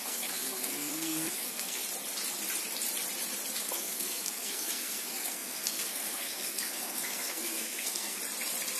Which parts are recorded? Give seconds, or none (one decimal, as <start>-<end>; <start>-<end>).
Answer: 1.8-3.6; 8.2-8.8